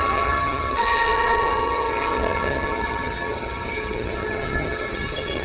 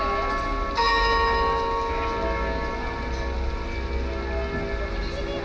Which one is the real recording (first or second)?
second